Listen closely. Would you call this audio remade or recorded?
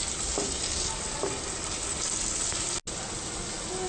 recorded